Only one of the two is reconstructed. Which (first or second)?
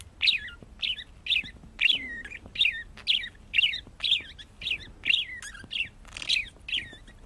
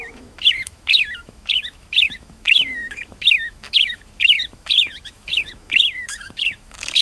second